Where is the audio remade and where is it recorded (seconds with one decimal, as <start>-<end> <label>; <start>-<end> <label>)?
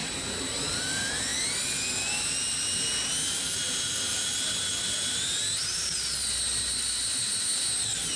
0.0-8.2 recorded